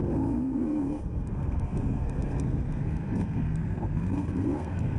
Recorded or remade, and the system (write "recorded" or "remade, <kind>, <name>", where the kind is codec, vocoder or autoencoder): remade, codec, SNAC